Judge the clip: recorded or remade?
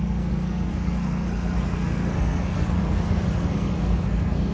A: remade